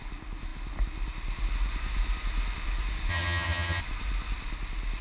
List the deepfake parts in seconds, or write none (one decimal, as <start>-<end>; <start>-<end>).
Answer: 3.1-3.8